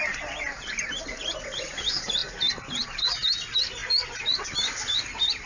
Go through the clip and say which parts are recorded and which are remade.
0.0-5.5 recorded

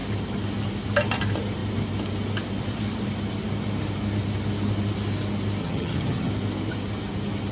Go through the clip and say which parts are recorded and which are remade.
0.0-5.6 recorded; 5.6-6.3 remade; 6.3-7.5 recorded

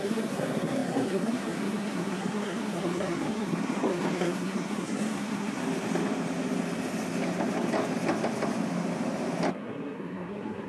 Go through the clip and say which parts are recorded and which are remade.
0.0-5.6 remade; 5.6-9.5 recorded; 9.5-10.7 remade

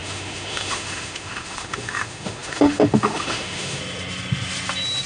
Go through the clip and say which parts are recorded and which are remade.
0.0-3.8 remade; 3.8-5.1 recorded